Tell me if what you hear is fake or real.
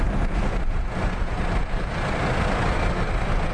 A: real